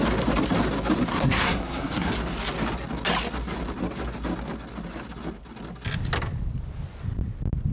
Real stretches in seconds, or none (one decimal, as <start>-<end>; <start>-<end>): 0.0-1.1; 2.1-7.7